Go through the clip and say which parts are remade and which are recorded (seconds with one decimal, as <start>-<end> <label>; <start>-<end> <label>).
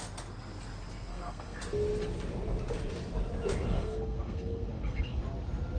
0.0-1.1 recorded; 1.1-1.6 remade; 1.6-3.7 recorded; 3.7-5.2 remade; 5.2-5.8 recorded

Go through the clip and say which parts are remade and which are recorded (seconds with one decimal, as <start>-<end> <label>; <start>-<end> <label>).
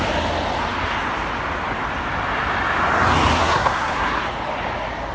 0.0-3.4 recorded; 3.4-4.2 remade; 4.2-5.1 recorded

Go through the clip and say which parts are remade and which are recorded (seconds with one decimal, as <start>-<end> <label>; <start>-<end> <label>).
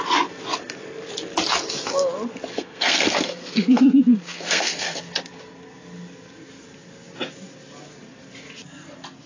0.0-2.5 recorded; 2.5-5.0 remade; 5.0-9.3 recorded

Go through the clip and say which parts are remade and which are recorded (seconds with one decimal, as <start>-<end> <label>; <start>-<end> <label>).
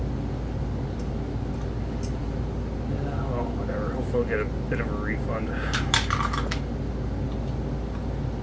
0.0-8.4 recorded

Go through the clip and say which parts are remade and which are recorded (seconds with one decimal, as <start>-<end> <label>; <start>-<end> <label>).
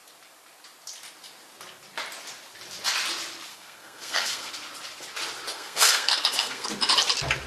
0.0-3.5 recorded; 3.5-4.5 remade; 4.5-5.5 recorded; 5.5-6.7 remade; 6.7-7.5 recorded